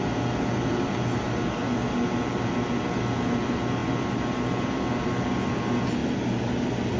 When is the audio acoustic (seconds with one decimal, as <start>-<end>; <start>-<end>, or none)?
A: 0.0-7.0